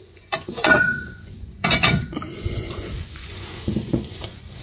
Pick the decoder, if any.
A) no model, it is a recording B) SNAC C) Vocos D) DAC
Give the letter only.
C